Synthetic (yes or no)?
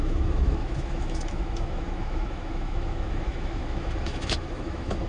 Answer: yes